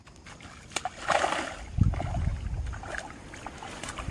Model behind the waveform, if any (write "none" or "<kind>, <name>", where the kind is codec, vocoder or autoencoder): none